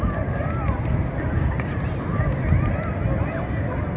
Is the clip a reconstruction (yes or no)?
no